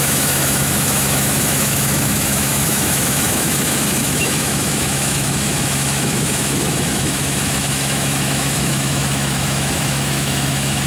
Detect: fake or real fake